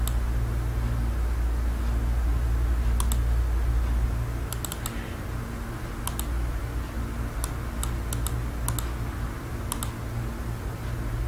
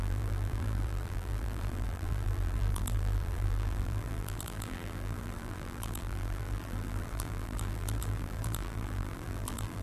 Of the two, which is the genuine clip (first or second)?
first